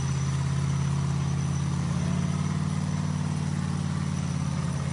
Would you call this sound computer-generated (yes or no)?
no